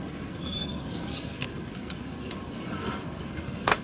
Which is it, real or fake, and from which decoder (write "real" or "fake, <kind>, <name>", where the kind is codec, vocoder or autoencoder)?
fake, codec, SNAC